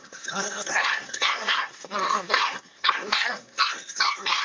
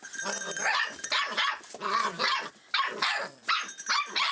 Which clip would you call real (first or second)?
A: second